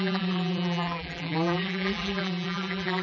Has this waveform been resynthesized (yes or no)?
yes